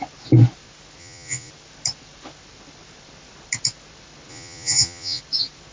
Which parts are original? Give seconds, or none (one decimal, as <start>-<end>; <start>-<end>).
0.0-1.0; 1.5-4.3; 5.2-5.7